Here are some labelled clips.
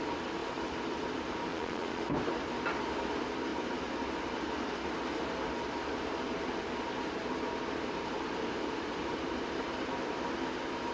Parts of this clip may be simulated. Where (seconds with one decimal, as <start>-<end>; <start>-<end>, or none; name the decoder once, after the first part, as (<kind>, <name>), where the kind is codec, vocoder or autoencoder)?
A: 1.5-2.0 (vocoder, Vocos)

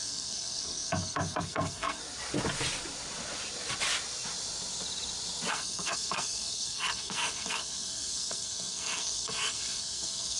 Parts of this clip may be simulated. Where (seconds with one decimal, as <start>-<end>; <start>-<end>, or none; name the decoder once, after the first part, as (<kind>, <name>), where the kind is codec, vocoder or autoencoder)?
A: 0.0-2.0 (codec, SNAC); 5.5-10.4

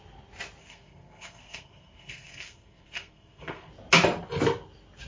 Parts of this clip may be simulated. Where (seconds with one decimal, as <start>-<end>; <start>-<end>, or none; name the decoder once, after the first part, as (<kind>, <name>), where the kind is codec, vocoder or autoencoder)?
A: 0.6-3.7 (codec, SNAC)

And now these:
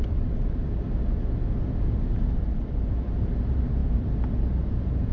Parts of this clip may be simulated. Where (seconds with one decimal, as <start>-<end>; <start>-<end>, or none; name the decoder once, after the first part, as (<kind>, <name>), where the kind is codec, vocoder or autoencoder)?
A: 0.0-0.6 (vocoder, BigVGAN v2); 2.3-5.1